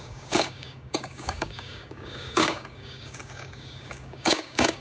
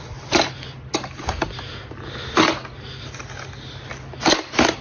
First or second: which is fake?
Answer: first